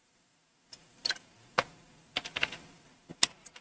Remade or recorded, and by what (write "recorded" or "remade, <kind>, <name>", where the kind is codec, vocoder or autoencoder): recorded